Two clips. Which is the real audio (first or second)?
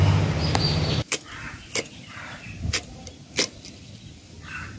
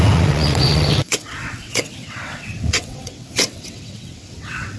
first